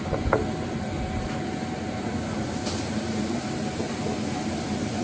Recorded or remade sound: recorded